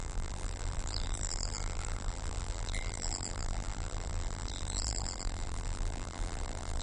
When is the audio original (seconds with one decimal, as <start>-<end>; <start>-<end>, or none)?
none